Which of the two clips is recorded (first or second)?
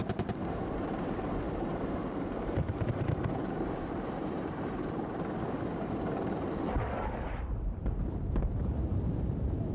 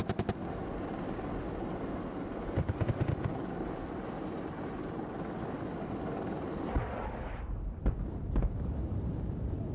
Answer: second